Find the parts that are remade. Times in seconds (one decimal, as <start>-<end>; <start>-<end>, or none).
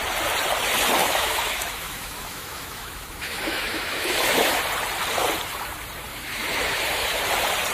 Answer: 1.0-4.6; 6.1-7.2